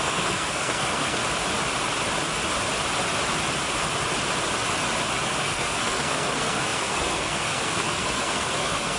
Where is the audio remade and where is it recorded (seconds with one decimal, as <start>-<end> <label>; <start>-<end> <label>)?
0.0-1.2 remade; 1.2-5.4 recorded; 5.4-9.0 remade